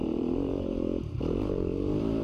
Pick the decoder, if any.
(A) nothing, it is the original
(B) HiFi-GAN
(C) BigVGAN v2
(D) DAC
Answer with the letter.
C